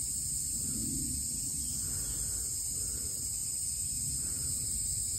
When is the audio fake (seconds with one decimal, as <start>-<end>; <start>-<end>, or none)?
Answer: 3.4-4.2